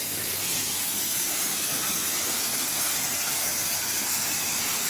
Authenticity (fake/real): fake